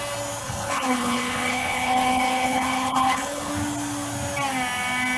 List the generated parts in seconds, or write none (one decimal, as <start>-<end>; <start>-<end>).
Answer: 0.4-3.5